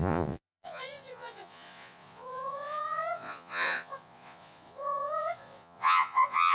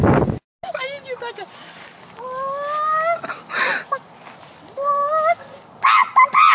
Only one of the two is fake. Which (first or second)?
first